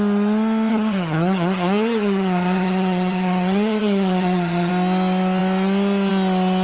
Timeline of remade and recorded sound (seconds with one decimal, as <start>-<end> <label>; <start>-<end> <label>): 0.0-0.7 recorded; 0.7-4.7 remade; 4.7-6.6 recorded